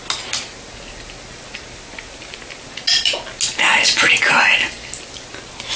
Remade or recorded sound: recorded